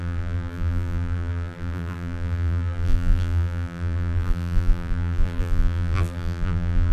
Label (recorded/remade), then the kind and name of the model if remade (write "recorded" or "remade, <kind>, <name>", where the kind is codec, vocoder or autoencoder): remade, vocoder, BigVGAN v2